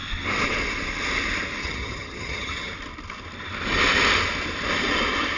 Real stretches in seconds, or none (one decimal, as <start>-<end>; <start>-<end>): 0.0-1.6; 2.7-5.4